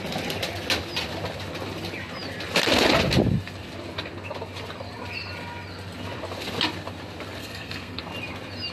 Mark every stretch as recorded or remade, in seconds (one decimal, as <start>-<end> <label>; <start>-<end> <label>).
0.0-7.4 recorded; 7.4-8.0 remade; 8.0-8.7 recorded